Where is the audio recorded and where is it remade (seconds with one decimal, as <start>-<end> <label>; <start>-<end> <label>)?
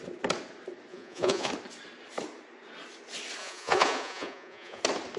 0.0-0.9 recorded; 0.9-1.5 remade; 1.5-3.4 recorded; 3.4-4.8 remade; 4.8-5.2 recorded